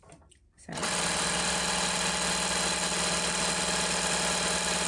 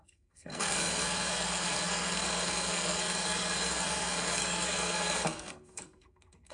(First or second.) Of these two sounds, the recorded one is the first